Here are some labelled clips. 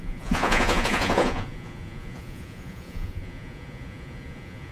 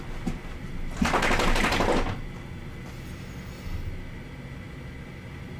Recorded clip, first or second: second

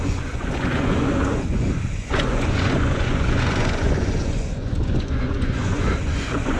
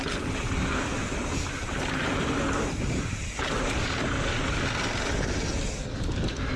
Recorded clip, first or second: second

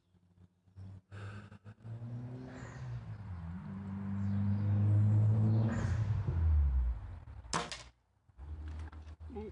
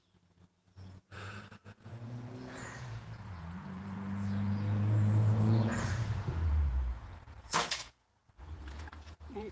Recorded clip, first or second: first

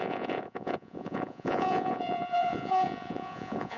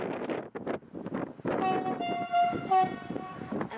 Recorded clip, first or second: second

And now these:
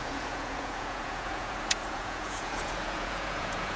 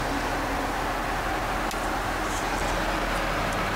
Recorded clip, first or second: second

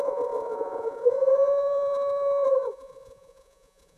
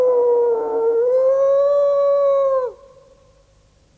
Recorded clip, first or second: second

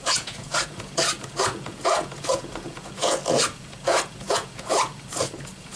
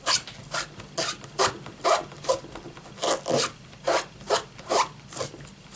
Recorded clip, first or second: second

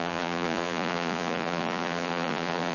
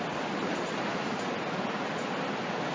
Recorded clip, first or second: second